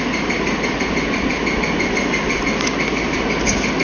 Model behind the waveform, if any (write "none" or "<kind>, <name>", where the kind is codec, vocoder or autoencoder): none